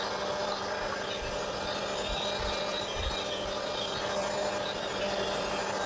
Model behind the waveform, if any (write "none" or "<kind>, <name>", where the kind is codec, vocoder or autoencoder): none